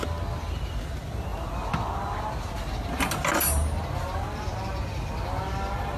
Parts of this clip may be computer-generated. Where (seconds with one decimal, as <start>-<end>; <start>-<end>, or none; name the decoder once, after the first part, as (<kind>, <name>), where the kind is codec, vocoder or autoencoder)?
none